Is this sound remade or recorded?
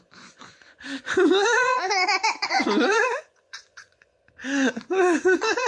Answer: remade